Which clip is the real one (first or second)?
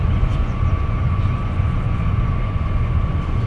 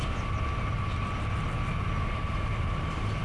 second